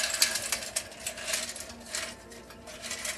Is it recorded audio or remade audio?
recorded